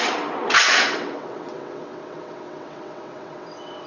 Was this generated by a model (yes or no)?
yes